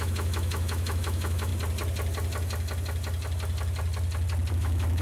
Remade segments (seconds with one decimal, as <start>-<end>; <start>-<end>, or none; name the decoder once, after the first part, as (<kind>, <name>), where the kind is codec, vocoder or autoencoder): 0.0-1.5 (autoencoder, DAC-VAE); 4.5-5.0